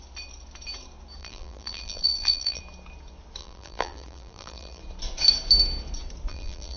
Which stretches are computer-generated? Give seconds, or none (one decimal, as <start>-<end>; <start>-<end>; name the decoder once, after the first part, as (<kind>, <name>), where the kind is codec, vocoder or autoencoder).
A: 1.2-2.6 (vocoder, BigVGAN v2); 3.4-4.8; 6.3-6.8